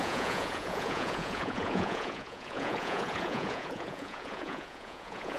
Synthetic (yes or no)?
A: yes